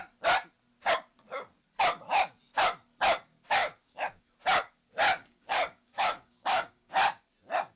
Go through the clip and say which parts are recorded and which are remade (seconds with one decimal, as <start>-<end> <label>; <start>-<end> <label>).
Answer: 0.0-3.6 recorded; 3.6-4.3 remade; 4.3-5.2 recorded; 5.2-6.9 remade; 6.9-7.8 recorded